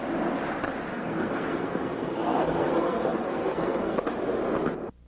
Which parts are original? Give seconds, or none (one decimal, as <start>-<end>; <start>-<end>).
0.0-0.9; 4.0-5.1